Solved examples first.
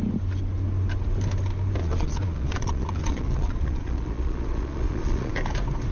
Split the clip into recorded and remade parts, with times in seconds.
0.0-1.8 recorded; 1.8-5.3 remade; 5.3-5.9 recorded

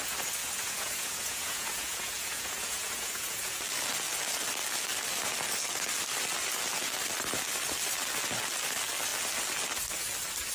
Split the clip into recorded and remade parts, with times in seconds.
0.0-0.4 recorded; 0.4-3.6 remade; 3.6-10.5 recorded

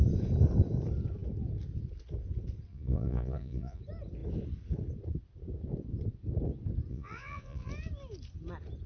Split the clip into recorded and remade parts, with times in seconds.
0.0-2.7 recorded; 2.7-3.8 remade; 3.8-6.9 recorded; 6.9-7.7 remade; 7.7-8.9 recorded

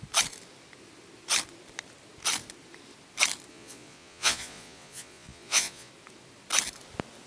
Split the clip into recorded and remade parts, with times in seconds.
0.0-3.5 recorded; 3.5-5.9 remade; 5.9-7.3 recorded

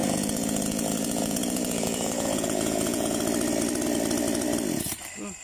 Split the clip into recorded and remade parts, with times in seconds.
0.0-3.2 remade; 3.2-5.4 recorded

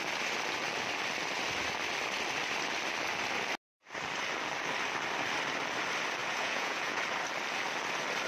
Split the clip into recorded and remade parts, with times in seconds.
0.0-6.2 recorded; 6.2-7.0 remade; 7.0-8.3 recorded

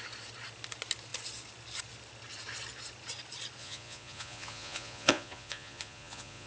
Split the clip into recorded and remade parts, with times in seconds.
0.0-3.6 recorded; 3.6-6.5 remade

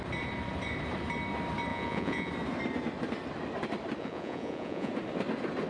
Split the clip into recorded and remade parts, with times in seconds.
0.0-1.7 recorded; 1.7-2.3 remade; 2.3-4.0 recorded; 4.0-4.9 remade; 4.9-5.7 recorded